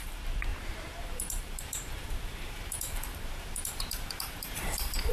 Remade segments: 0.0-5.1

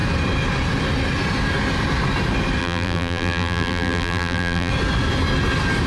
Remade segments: 2.6-4.7

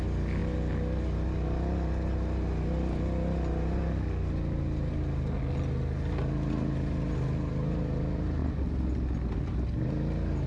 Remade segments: none

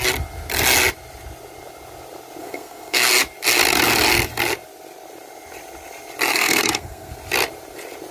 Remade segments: 2.4-3.1; 6.3-7.1

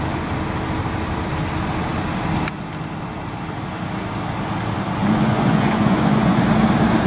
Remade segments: 5.0-6.4

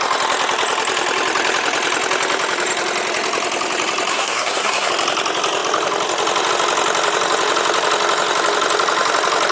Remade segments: 4.1-4.9

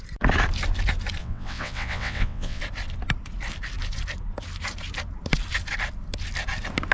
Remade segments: 1.2-2.6

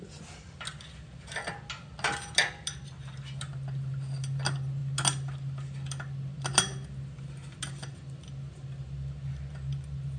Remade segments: none